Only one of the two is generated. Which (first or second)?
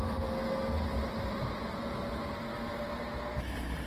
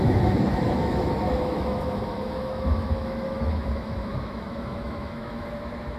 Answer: second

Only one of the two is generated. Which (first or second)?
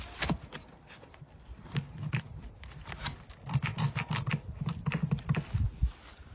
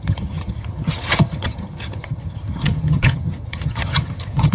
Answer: second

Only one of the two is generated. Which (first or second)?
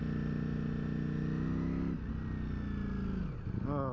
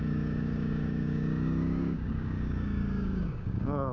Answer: second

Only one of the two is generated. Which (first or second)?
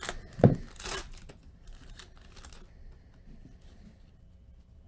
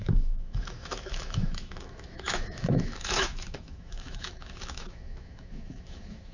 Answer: second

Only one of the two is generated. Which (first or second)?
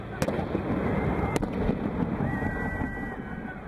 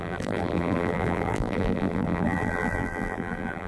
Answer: second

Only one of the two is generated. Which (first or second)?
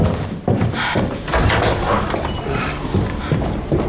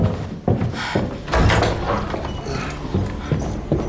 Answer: first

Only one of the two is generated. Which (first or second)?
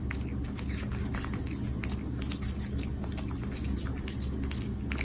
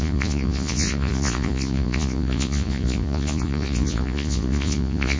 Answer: second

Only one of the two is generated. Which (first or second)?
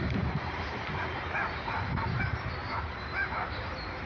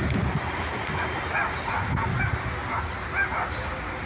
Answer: first